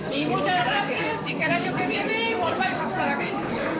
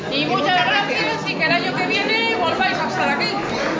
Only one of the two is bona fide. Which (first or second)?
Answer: second